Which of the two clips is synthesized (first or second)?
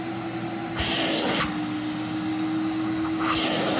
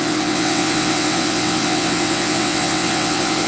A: second